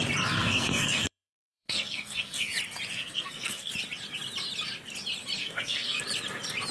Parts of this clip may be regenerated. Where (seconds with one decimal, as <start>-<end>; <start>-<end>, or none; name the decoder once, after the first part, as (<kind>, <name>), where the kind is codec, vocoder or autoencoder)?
0.4-2.5 (codec, SNAC); 2.9-3.7; 5.4-6.0